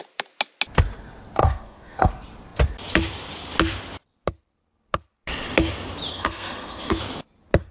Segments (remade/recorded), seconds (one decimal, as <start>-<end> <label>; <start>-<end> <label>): 0.0-1.4 recorded; 1.4-2.1 remade; 2.1-6.1 recorded; 6.1-7.0 remade; 7.0-7.7 recorded